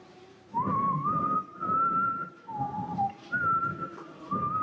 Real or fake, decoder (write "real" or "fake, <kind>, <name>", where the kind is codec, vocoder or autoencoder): fake, vocoder, BigVGAN v2